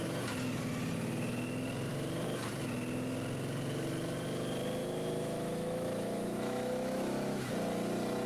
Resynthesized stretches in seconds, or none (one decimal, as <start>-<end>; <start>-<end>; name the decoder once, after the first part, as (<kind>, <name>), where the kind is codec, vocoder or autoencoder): 4.8-7.5 (autoencoder, DAC-VAE)